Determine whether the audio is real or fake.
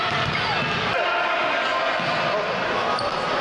real